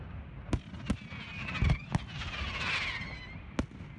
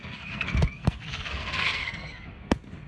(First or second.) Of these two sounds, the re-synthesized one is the second